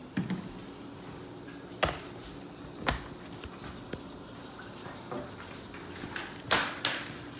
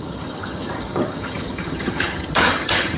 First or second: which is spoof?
second